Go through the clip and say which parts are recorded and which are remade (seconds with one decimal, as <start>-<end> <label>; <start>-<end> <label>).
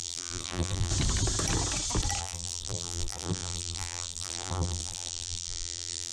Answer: 0.0-0.9 remade; 0.9-2.2 recorded; 2.2-6.1 remade